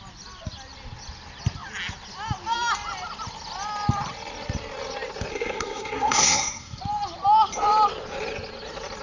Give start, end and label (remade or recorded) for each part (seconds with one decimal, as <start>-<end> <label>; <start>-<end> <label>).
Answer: 0.0-5.3 recorded; 5.3-6.8 remade; 6.8-9.0 recorded